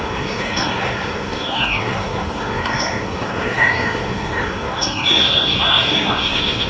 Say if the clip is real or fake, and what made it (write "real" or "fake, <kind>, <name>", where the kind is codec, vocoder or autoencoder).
fake, codec, SNAC